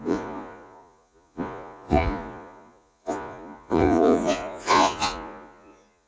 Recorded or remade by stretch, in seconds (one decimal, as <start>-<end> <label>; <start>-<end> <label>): 0.0-6.1 remade